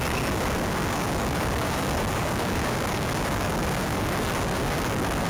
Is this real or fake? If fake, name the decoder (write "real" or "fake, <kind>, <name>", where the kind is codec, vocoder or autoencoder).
fake, codec, DAC